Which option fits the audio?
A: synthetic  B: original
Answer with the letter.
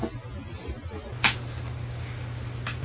B